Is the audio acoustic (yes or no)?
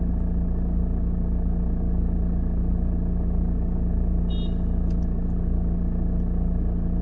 yes